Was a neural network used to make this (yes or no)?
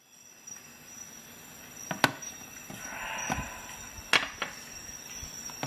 no